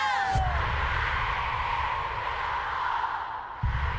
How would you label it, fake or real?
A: real